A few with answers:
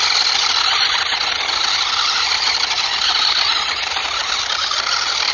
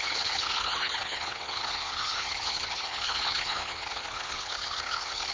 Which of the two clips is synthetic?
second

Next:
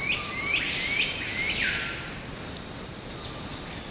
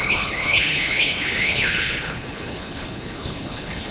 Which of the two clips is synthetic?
second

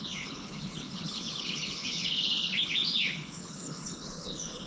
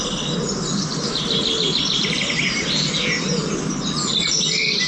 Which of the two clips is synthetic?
first